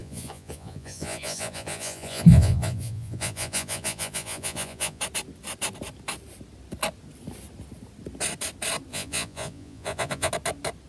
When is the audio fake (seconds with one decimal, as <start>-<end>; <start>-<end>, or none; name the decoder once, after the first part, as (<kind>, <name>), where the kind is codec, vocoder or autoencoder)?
0.0-5.0 (vocoder, Vocos); 8.9-10.3